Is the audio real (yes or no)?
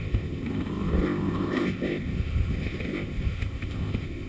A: no